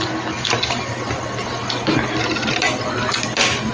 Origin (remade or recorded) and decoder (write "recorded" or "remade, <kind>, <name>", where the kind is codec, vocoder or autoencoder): recorded